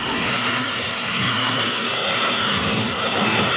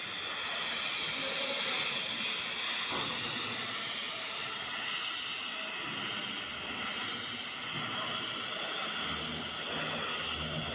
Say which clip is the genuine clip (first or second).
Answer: second